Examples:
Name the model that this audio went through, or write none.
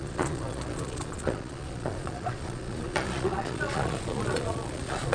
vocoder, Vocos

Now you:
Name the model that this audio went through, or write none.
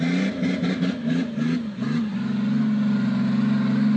none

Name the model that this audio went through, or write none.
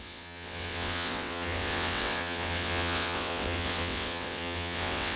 vocoder, WaveNeXt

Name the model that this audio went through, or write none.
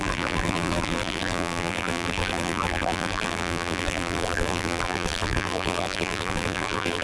vocoder, BigVGAN v2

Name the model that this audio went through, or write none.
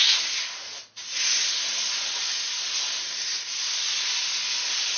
none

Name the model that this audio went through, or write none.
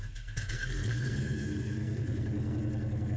codec, SNAC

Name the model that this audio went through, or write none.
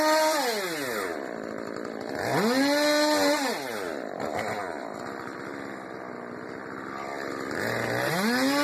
none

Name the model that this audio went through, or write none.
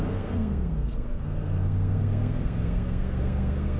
codec, SNAC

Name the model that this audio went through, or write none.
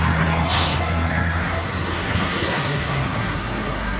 codec, SNAC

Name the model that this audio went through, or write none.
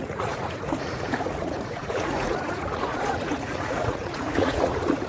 vocoder, Vocos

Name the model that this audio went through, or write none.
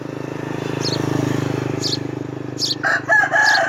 none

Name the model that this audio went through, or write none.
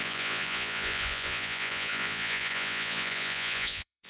vocoder, Vocos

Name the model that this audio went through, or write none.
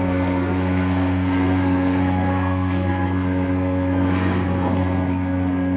codec, SNAC